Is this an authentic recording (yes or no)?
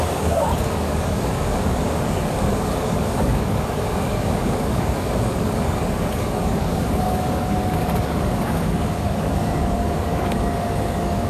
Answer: no